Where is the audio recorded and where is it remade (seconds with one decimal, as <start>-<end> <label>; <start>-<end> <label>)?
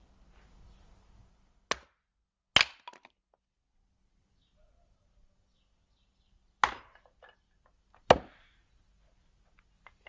0.0-10.1 recorded